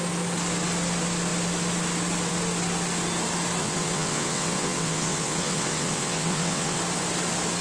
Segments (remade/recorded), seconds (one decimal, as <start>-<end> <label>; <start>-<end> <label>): 0.0-3.6 recorded; 3.6-6.8 remade; 6.8-7.6 recorded

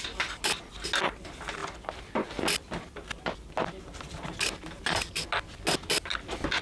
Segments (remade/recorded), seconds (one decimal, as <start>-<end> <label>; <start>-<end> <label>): 0.0-6.6 recorded

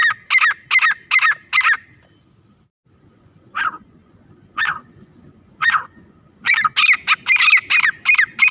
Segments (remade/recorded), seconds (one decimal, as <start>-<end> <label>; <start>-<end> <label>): 0.0-3.0 recorded; 3.0-6.6 remade; 6.6-8.5 recorded

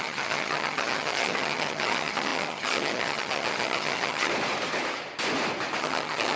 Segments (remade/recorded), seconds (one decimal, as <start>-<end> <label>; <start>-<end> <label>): 0.0-4.3 remade; 4.3-5.8 recorded; 5.8-6.4 remade

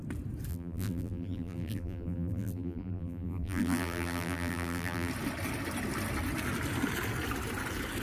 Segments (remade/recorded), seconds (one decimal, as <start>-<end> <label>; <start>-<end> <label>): 0.0-0.5 recorded; 0.5-5.1 remade; 5.1-8.0 recorded

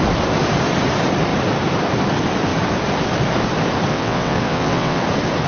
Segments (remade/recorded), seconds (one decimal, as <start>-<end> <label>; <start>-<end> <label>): 0.0-3.9 recorded; 3.9-5.0 remade; 5.0-5.5 recorded

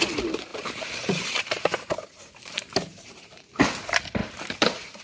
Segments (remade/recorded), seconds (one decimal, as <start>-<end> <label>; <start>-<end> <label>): 0.0-0.5 recorded; 0.5-3.5 remade; 3.5-4.2 recorded; 4.2-5.0 remade